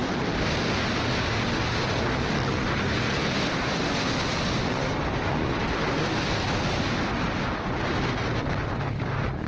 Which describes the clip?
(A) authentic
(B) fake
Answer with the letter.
A